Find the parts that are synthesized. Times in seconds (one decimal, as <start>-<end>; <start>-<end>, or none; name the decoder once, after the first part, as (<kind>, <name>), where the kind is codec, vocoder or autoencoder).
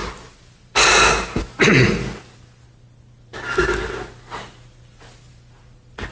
none